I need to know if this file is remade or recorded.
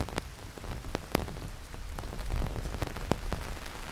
recorded